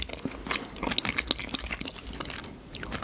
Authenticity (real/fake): real